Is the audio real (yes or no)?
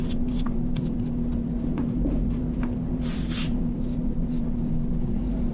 no